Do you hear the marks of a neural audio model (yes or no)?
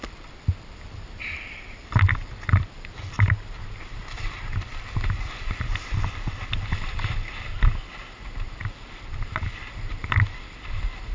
yes